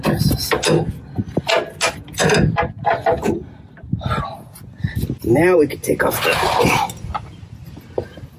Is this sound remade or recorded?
recorded